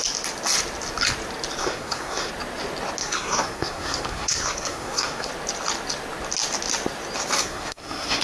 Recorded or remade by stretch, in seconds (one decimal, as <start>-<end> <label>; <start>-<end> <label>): 0.0-1.6 recorded; 1.6-2.3 remade; 2.3-3.0 recorded; 3.0-5.3 remade; 5.3-7.4 recorded; 7.4-8.2 remade